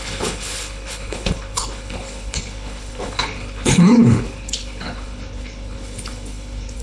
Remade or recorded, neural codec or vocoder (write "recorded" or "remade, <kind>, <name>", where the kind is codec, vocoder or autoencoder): remade, codec, HILCodec